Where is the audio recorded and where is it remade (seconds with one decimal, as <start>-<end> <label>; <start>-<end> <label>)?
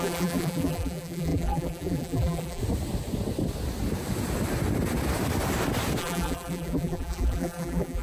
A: 0.0-2.6 remade; 2.6-6.0 recorded; 6.0-8.0 remade